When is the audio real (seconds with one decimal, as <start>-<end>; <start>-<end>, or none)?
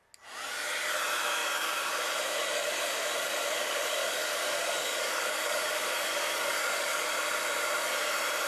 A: 0.0-1.4; 1.9-2.4; 7.1-8.5